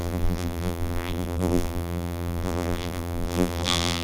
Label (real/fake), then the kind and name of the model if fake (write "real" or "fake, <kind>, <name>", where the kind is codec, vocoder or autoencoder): fake, vocoder, BigVGAN v2